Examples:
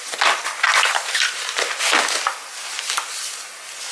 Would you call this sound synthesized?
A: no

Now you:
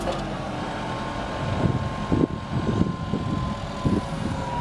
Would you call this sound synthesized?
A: no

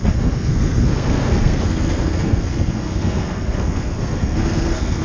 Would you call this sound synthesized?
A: yes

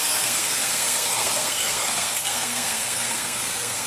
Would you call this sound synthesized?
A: yes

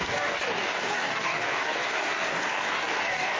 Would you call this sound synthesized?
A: yes